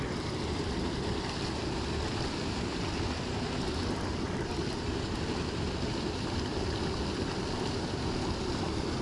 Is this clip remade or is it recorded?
recorded